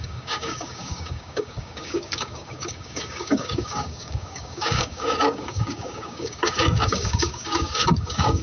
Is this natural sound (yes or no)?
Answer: no